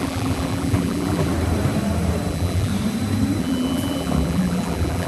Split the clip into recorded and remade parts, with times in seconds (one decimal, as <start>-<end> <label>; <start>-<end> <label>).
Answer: 0.0-1.3 remade; 1.3-2.3 recorded; 2.3-2.7 remade; 2.7-3.4 recorded; 3.4-5.1 remade